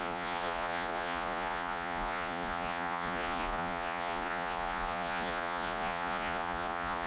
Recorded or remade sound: remade